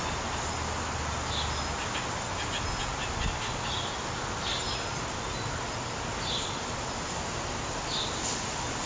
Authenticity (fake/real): real